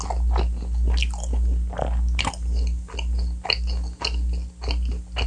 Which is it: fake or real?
real